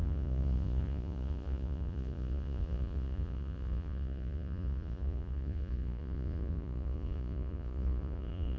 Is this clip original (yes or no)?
no